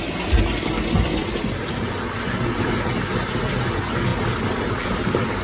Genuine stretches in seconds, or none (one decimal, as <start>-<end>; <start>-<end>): 0.0-4.1